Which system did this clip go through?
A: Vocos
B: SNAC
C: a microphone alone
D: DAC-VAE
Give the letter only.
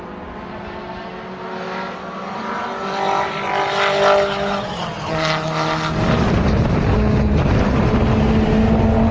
C